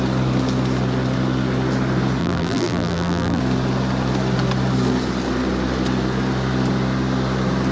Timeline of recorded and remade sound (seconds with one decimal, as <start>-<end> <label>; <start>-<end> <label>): 0.0-2.2 recorded; 2.2-3.4 remade; 3.4-7.7 recorded